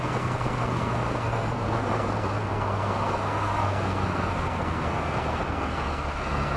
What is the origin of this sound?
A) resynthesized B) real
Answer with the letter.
A